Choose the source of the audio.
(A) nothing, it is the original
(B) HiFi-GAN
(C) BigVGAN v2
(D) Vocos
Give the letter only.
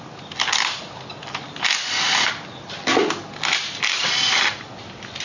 A